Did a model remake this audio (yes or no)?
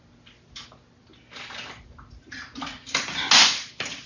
no